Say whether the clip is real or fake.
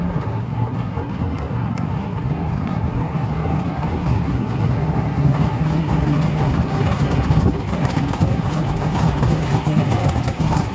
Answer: fake